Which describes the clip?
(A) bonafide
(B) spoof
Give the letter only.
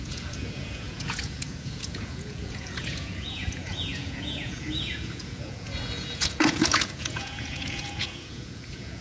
B